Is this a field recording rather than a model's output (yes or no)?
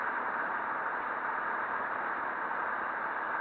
yes